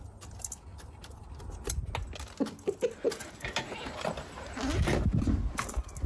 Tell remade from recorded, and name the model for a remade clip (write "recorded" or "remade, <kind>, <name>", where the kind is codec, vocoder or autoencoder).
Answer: recorded